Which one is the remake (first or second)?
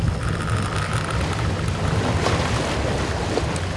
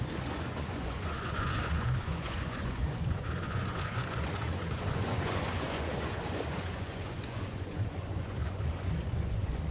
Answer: second